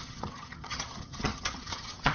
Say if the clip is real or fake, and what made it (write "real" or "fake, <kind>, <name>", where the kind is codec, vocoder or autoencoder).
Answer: fake, vocoder, HiFi-GAN